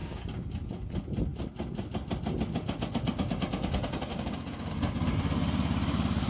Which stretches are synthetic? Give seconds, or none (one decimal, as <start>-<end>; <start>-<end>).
0.0-0.6; 4.1-4.7